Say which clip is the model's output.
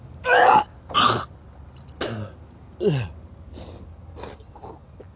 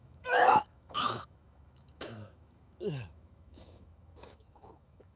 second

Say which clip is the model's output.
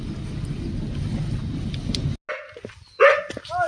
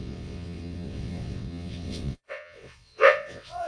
second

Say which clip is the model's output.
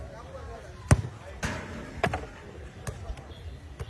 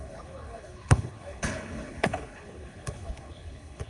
second